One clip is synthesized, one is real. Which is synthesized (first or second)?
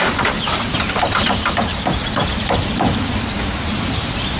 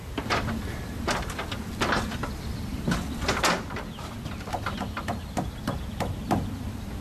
first